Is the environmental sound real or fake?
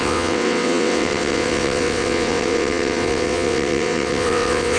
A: fake